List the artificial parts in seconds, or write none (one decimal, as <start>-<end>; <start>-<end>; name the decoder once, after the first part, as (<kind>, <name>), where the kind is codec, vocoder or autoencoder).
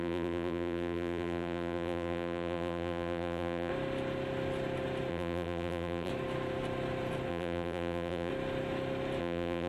0.0-3.7 (vocoder, BigVGAN v2); 5.1-6.1; 7.3-8.3; 9.2-9.7